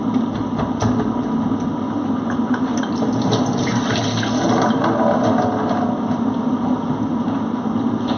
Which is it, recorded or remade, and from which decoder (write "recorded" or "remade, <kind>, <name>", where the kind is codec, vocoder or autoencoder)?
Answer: recorded